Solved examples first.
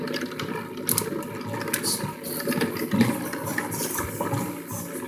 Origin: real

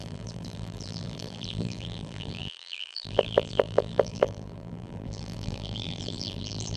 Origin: fake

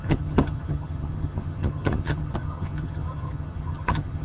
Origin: fake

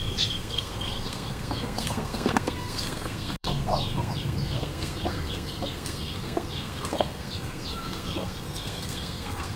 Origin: fake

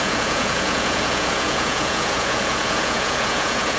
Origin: fake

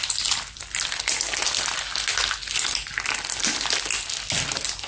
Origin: real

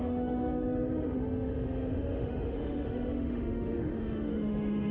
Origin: fake